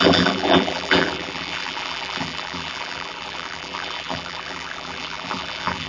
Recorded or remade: remade